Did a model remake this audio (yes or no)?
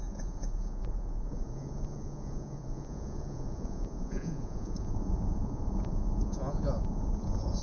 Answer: yes